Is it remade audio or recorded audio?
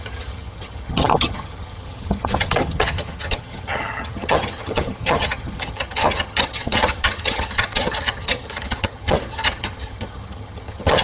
remade